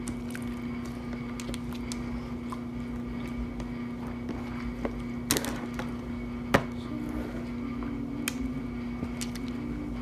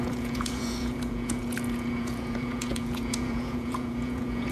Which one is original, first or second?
first